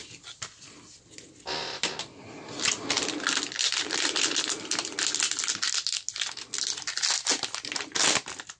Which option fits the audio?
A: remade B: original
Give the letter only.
B